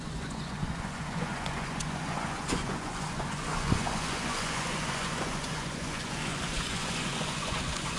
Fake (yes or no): yes